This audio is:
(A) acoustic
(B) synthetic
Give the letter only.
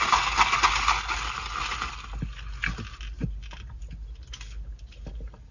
A